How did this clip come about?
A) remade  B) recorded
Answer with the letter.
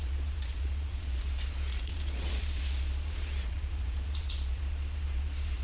A